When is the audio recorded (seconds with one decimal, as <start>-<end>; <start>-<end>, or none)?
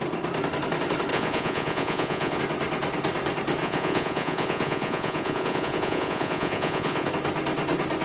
0.0-1.1; 2.4-3.6; 7.1-8.0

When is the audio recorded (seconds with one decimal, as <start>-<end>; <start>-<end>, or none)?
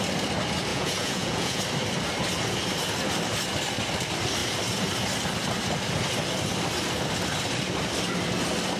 0.0-0.7; 1.6-8.8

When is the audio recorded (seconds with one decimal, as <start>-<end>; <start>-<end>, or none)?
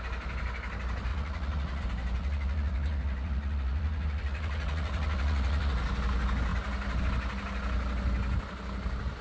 0.0-1.1; 1.8-2.2; 5.7-9.2